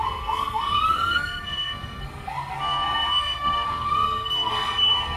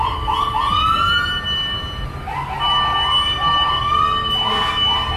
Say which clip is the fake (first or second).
first